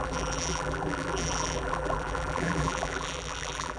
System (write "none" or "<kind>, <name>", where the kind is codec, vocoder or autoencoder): vocoder, BigVGAN v2